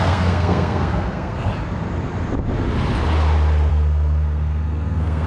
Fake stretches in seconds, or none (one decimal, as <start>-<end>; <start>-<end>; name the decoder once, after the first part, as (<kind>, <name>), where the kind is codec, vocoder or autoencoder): 0.0-1.5 (codec, SNAC); 3.7-5.3